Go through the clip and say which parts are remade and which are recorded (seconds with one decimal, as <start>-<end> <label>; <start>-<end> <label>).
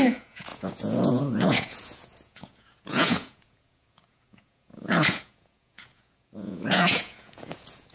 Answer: 0.0-7.9 remade